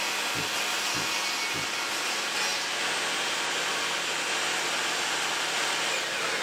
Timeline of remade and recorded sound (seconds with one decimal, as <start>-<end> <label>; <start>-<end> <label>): 0.0-6.4 recorded